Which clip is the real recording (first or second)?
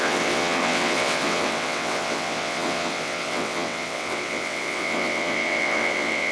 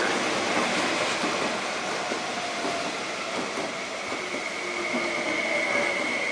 second